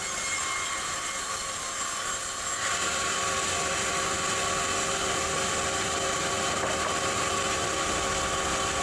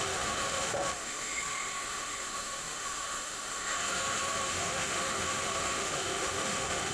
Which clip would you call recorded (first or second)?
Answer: first